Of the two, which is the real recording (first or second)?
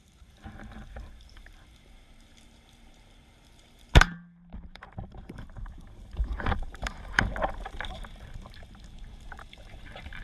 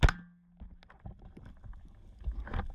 second